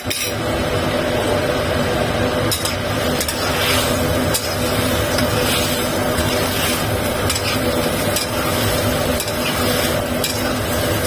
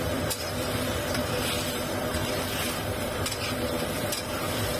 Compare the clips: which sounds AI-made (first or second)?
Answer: second